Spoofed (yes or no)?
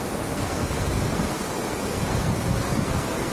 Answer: yes